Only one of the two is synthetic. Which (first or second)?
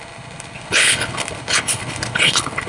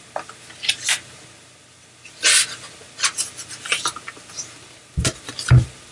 first